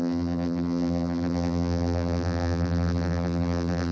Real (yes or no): no